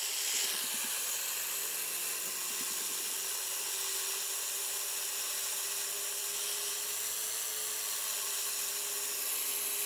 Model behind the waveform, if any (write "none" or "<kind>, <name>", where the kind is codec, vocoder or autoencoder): none